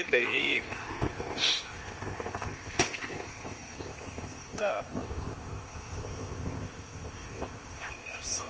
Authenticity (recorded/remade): remade